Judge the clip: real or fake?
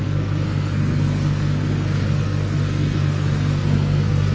fake